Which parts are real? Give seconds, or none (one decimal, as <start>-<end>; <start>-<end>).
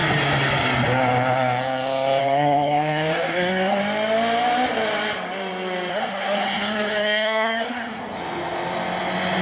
0.0-2.2; 3.8-5.9; 8.0-9.4